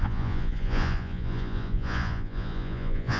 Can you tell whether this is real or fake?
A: fake